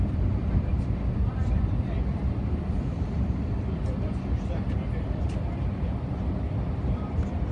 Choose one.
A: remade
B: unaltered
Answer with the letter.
A